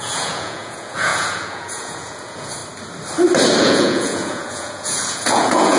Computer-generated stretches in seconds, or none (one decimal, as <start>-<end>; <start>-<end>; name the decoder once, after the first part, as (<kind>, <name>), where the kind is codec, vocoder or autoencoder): 0.0-2.6 (vocoder, Vocos); 3.6-5.8